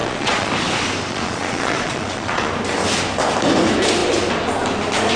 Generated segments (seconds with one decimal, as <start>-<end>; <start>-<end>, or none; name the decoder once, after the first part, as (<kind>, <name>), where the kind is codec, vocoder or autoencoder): 0.0-0.5 (vocoder, Vocos); 1.1-2.5